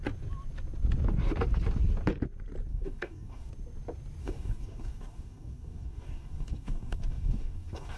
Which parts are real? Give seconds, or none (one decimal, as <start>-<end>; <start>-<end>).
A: 0.0-2.7; 3.5-4.2